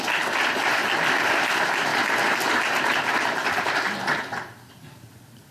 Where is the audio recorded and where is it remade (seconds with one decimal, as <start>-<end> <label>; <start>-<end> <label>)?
0.0-5.5 recorded